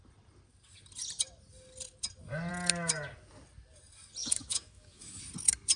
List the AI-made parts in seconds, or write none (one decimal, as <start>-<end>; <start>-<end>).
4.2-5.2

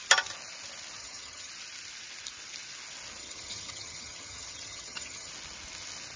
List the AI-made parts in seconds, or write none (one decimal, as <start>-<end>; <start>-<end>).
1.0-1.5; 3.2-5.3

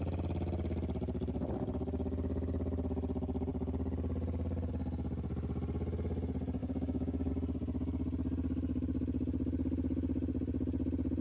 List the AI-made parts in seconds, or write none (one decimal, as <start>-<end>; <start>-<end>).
6.6-7.3

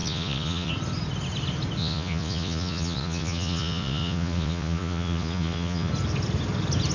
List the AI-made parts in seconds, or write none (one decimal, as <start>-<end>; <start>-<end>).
0.0-0.7; 1.8-5.9